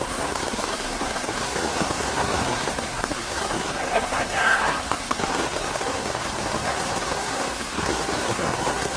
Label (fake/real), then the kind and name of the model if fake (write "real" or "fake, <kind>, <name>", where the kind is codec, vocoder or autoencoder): fake, codec, SNAC